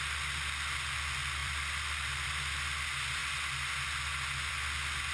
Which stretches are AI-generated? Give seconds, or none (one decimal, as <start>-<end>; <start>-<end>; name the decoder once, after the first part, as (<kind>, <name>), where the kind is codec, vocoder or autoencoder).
1.4-2.3 (vocoder, BigVGAN v2)